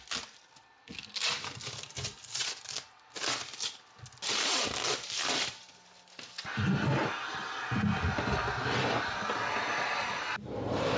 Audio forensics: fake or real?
real